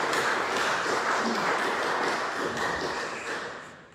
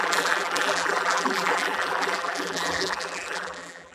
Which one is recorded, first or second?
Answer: first